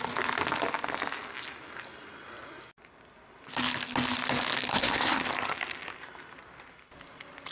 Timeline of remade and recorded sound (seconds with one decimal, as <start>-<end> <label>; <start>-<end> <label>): 0.0-4.7 recorded; 4.7-5.2 remade; 5.2-7.5 recorded